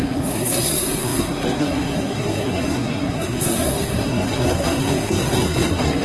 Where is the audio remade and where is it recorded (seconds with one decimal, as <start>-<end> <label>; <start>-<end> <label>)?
0.0-6.0 remade